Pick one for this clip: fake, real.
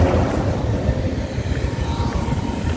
real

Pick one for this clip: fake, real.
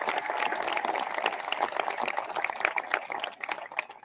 real